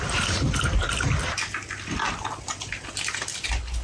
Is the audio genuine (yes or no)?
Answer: yes